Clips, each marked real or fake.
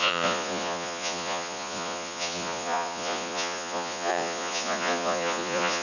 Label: fake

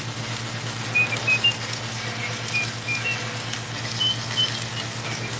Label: real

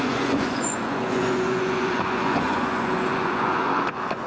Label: fake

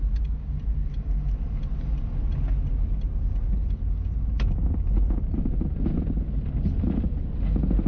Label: real